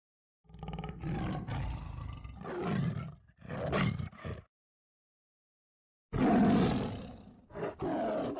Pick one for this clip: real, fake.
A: real